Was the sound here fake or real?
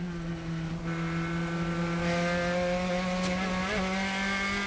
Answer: real